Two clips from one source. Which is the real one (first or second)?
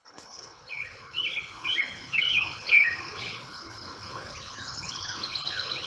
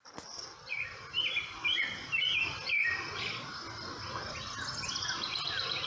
second